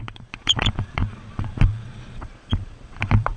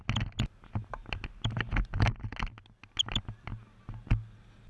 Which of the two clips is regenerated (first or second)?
first